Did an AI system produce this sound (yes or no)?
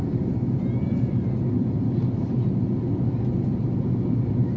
no